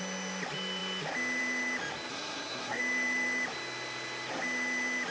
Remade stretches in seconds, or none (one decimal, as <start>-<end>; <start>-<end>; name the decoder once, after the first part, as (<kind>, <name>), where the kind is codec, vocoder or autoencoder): 2.1-2.8 (codec, SNAC)